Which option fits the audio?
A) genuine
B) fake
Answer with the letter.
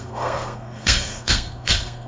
B